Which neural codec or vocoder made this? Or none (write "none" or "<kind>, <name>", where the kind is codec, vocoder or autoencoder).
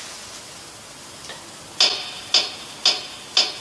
none